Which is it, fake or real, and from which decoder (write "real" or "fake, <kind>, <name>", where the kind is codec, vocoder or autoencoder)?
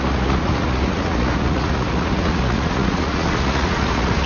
fake, vocoder, Vocos